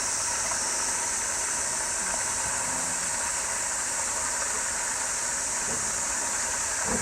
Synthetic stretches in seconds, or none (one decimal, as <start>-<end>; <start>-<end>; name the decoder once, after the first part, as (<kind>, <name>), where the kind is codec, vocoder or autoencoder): none